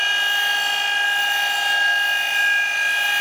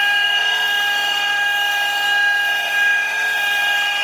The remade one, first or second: second